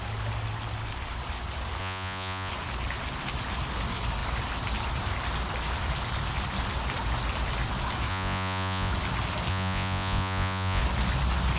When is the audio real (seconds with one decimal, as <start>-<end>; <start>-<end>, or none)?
0.0-1.8; 2.5-8.1; 8.9-9.5; 10.8-11.6